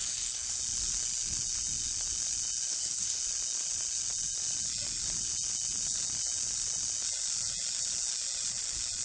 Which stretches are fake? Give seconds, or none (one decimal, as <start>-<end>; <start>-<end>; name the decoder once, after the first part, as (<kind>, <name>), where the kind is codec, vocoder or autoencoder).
0.0-0.6 (codec, HILCodec); 2.7-3.2